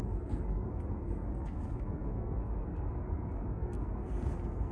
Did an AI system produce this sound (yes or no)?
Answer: yes